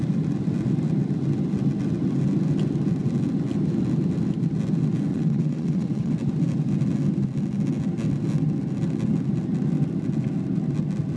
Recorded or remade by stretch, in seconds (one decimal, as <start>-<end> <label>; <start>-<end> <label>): 0.0-5.1 recorded; 5.1-6.1 remade; 6.1-11.2 recorded